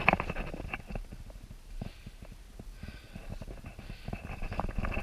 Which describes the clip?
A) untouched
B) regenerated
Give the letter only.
A